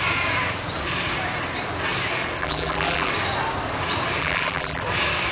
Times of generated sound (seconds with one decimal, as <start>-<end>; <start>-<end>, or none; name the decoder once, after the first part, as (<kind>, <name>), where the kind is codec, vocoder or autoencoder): 2.4-3.1 (vocoder, BigVGAN v2); 4.2-4.8

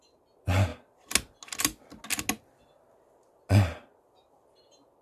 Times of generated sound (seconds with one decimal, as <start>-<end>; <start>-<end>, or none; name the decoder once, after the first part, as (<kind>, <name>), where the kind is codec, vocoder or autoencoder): none